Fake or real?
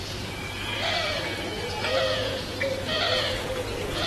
fake